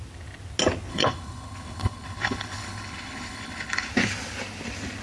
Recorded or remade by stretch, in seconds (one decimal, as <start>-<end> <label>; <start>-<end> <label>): 0.0-0.9 recorded; 0.9-3.9 remade; 3.9-5.0 recorded